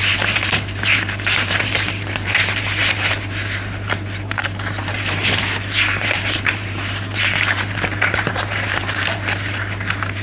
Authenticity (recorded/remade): remade